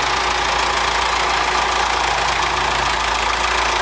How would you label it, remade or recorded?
recorded